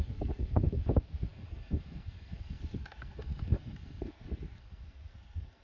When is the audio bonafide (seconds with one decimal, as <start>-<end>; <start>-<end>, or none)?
none